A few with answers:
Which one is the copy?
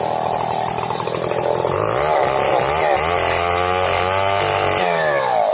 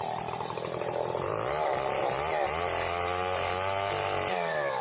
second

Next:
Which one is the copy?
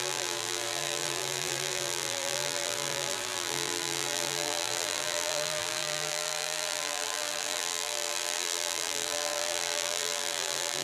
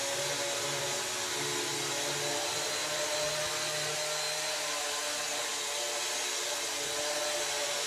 first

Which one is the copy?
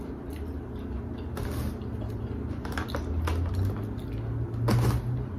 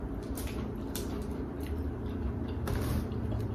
second